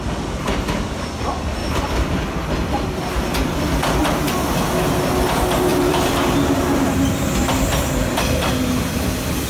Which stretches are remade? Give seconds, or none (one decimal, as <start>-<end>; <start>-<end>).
1.6-3.6; 5.7-9.5